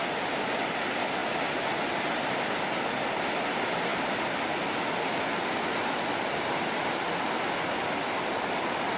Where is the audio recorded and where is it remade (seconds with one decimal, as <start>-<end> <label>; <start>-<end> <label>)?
0.0-9.0 recorded

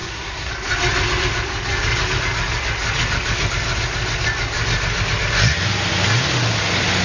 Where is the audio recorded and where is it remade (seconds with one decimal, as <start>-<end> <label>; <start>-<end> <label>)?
0.0-0.5 remade; 0.5-7.0 recorded

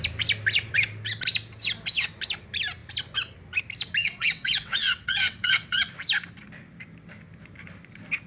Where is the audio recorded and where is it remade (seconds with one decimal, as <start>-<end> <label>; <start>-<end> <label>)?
0.0-4.0 recorded; 4.0-5.8 remade; 5.8-8.3 recorded